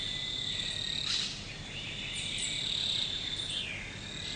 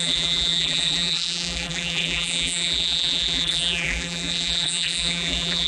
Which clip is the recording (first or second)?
first